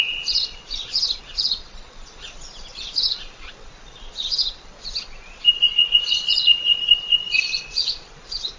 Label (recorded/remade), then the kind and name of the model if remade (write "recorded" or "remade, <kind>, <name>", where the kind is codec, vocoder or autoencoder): remade, vocoder, Vocos